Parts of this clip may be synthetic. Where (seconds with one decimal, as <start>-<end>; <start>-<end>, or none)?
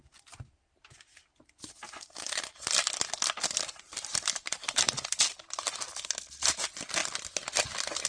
none